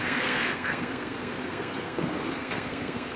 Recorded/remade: remade